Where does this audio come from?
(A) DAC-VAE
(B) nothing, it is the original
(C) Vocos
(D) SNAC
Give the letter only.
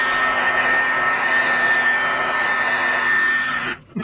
B